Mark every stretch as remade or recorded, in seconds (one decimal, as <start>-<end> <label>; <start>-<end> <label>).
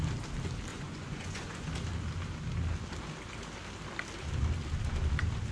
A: 0.0-0.7 recorded; 0.7-1.7 remade; 1.7-5.5 recorded